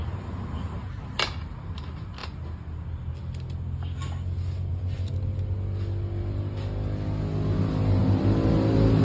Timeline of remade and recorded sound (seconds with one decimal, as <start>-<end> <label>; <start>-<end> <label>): 0.0-9.0 recorded